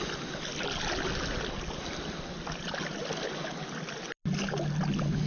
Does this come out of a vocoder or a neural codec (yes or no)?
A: no